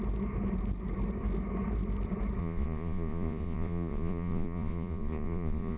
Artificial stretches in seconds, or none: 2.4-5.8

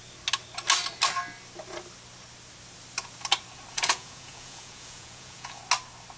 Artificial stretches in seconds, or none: 3.7-5.6